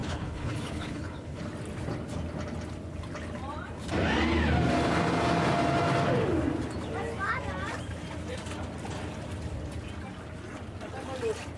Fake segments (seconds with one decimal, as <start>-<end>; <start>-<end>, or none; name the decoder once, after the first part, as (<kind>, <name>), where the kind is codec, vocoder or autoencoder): 0.0-1.4 (codec, HILCodec)